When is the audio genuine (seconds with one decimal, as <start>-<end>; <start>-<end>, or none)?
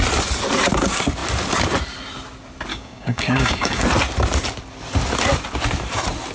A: 0.0-2.7; 3.8-6.3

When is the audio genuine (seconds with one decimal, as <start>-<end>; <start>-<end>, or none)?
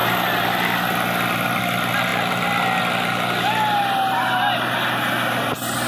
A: 0.0-5.9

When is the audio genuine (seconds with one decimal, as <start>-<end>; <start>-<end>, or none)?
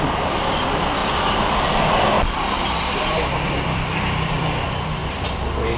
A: 1.0-3.1; 5.0-5.8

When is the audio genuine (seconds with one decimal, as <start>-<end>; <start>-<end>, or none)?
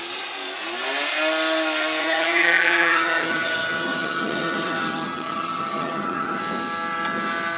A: 0.0-2.0; 6.4-7.6